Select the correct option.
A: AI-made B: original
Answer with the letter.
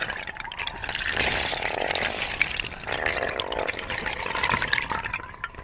A